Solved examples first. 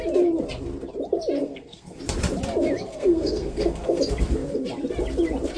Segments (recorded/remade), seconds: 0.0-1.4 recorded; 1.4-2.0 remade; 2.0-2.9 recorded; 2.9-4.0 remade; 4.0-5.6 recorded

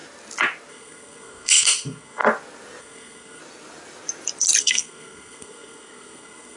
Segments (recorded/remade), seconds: 0.0-0.7 recorded; 0.7-2.2 remade; 2.2-2.8 recorded; 2.8-3.4 remade; 3.4-4.6 recorded; 4.6-6.6 remade

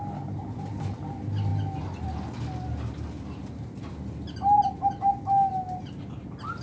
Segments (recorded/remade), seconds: 0.0-6.6 recorded